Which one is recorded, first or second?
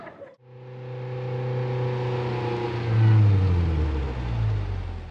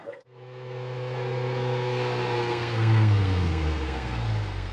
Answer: first